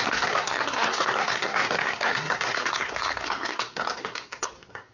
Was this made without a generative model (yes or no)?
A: no